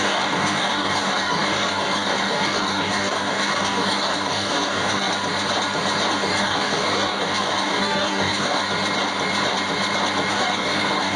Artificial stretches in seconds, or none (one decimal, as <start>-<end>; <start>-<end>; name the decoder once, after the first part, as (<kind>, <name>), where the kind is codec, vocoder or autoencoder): 0.0-5.1 (codec, DAC); 6.2-8.6; 10.3-11.2